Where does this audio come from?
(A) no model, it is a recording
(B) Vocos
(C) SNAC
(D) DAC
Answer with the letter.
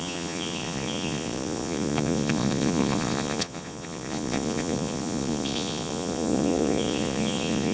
B